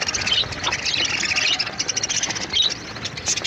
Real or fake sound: real